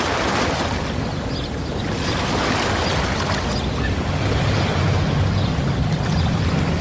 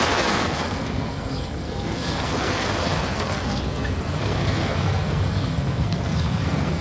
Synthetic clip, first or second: second